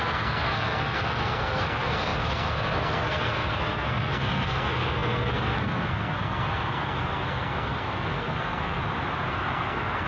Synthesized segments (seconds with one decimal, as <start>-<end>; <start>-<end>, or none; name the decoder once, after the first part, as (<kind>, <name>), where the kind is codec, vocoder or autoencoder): 0.0-8.8 (codec, SNAC); 9.3-10.1